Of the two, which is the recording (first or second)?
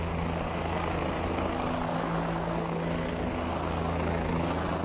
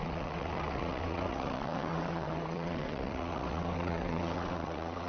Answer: first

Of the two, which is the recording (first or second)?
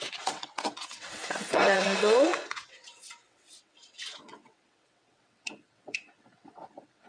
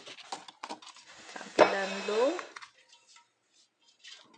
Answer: second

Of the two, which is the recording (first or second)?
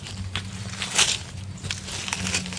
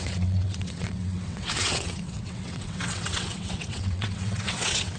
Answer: first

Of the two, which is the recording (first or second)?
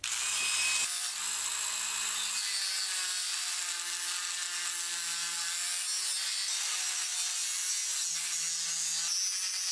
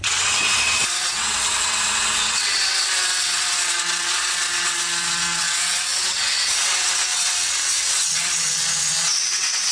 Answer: first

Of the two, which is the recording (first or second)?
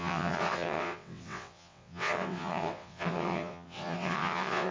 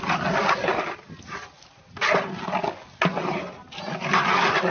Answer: second